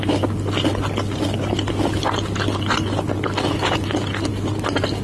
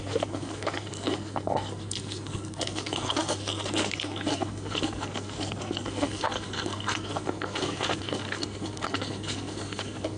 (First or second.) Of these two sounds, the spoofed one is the second